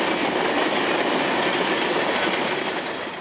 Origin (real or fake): real